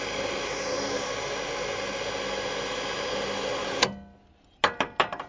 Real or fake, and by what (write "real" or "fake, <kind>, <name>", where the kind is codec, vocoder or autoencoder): real